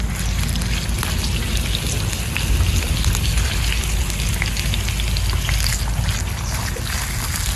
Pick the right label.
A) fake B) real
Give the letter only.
B